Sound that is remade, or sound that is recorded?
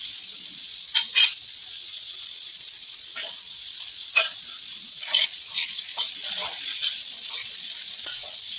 remade